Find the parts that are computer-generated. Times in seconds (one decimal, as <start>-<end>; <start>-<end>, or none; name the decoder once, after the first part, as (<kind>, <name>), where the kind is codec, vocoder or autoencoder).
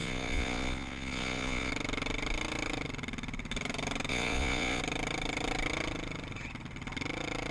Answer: 0.0-1.7 (vocoder, Vocos); 4.1-4.8